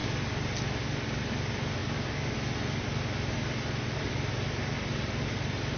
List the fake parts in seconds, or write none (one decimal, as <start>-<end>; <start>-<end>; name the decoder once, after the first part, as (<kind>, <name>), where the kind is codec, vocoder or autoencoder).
none